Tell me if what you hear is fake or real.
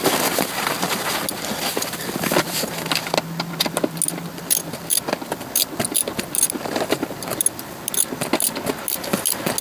real